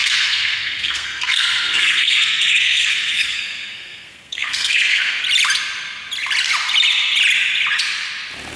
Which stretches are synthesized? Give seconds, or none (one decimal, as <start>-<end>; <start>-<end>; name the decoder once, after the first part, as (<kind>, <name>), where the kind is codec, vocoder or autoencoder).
0.0-5.2 (codec, SNAC)